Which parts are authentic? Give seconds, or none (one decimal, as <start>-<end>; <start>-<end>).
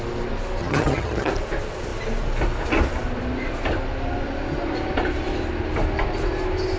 0.0-0.6; 1.3-6.8